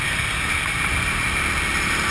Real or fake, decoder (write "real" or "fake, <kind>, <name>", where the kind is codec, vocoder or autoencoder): real